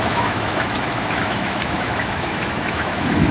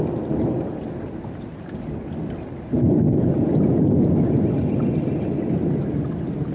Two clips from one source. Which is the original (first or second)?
second